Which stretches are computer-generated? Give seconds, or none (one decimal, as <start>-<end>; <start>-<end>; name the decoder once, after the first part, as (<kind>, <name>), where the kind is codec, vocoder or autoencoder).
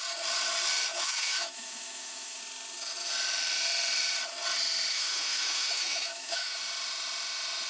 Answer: 0.9-2.4 (autoencoder, DAC-VAE); 4.9-6.6